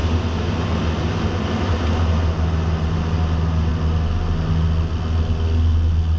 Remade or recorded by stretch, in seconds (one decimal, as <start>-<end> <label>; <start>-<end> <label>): 0.0-6.2 recorded